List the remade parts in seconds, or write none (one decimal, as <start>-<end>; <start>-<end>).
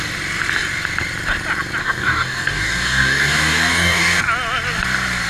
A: 1.8-4.2